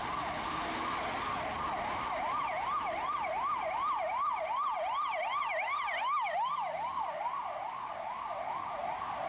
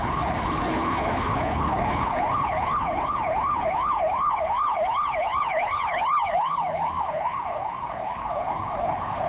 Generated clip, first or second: second